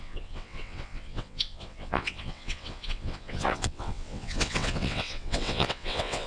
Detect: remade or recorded remade